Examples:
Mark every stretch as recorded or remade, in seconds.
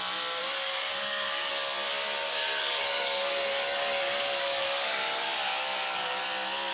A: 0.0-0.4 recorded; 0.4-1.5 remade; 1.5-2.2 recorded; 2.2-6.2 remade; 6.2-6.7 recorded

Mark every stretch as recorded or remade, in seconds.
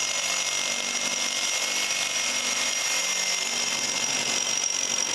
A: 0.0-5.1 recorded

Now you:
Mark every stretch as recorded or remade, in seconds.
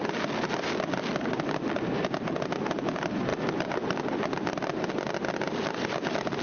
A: 0.0-6.4 recorded